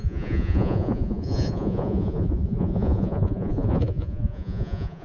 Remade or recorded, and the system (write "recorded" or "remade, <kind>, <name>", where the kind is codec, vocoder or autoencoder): remade, vocoder, Vocos